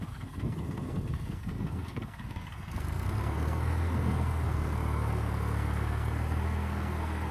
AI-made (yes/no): yes